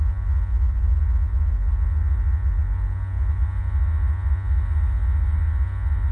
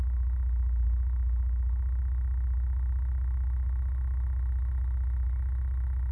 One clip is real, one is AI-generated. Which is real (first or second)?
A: second